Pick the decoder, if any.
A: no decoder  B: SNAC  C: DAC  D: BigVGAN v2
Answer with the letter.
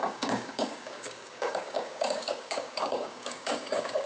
C